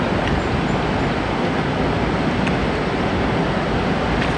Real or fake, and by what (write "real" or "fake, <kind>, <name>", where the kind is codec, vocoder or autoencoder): real